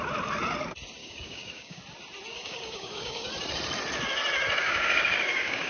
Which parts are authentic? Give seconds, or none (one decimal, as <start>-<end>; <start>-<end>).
0.0-1.0; 1.8-2.3; 3.3-4.6